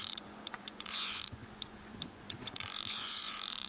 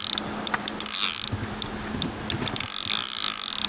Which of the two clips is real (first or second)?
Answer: second